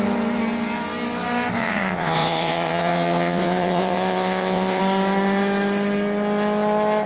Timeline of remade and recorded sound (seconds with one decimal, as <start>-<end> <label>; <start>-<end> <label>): 0.0-1.6 recorded; 1.6-4.8 remade; 4.8-7.1 recorded